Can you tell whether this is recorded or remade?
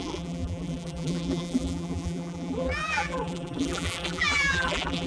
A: remade